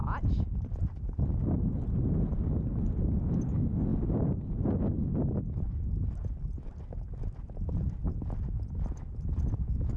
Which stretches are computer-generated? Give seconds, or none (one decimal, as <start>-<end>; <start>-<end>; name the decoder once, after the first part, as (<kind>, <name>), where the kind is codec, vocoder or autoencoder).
none